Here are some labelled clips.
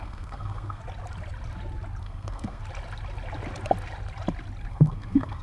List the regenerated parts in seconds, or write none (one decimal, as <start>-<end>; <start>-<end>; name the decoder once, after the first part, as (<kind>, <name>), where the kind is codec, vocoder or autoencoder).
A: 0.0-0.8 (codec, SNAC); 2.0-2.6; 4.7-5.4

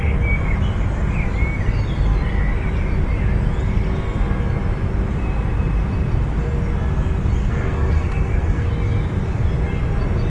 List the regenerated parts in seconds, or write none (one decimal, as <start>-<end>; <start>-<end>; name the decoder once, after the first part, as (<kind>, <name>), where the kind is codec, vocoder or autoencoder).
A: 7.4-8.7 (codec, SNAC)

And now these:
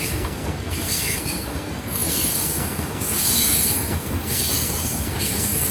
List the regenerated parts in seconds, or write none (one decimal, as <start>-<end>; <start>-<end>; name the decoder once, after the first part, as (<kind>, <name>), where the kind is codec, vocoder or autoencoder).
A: 0.0-5.7 (codec, SNAC)

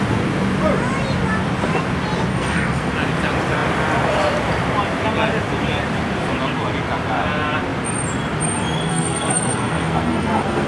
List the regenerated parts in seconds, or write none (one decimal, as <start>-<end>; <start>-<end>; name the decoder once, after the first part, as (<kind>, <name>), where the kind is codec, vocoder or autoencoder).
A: 2.3-2.9 (codec, SNAC); 8.9-10.7

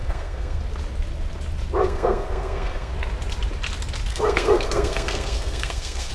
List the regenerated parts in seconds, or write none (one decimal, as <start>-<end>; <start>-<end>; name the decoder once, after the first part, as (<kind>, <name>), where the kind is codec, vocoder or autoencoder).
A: 0.0-0.6 (codec, SNAC); 1.8-2.9; 4.1-6.1

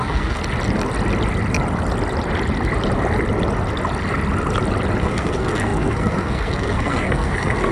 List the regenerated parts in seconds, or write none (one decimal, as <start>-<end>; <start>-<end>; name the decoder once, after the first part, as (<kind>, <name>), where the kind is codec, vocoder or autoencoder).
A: 0.0-0.4 (codec, SNAC); 5.0-7.7

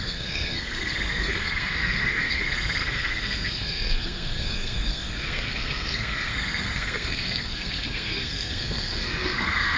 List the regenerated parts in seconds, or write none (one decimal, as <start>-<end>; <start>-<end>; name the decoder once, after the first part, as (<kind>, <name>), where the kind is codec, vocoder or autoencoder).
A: 0.0-9.8 (codec, SNAC)